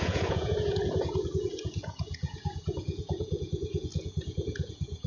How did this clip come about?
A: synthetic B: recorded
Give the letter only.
A